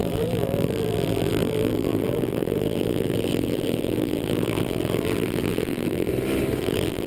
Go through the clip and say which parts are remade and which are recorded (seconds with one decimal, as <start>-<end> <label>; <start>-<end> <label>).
0.0-6.1 remade; 6.1-6.6 recorded; 6.6-7.1 remade